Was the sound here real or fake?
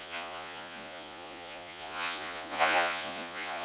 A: fake